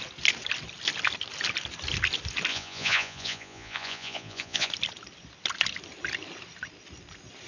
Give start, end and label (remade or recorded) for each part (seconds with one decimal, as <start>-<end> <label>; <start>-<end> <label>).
0.0-2.5 recorded; 2.5-4.7 remade; 4.7-7.5 recorded